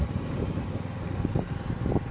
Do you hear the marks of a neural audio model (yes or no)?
no